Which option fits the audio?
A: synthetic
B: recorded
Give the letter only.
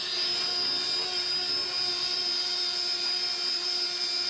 B